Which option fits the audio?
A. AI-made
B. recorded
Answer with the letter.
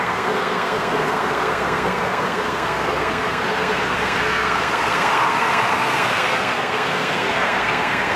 A